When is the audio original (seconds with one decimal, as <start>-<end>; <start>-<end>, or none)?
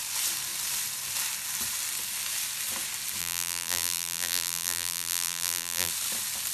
0.0-3.2; 5.9-6.5